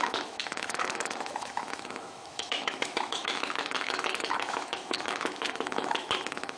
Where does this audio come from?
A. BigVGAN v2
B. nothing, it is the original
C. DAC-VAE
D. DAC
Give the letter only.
C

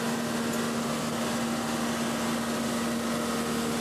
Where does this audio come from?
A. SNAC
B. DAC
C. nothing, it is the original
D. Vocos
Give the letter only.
C